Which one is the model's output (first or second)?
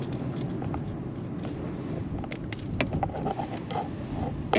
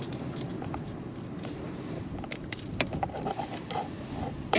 second